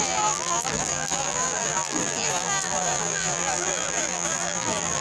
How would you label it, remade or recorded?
remade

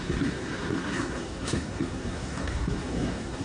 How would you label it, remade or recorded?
remade